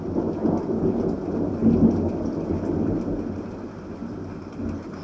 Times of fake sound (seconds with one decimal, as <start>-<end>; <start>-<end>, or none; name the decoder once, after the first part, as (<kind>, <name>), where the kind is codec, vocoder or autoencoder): none